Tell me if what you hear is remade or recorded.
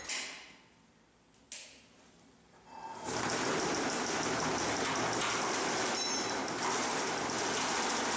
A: recorded